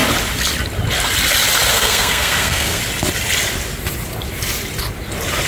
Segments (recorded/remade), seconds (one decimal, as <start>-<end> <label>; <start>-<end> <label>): 0.0-1.7 recorded; 1.7-2.8 remade; 2.8-5.5 recorded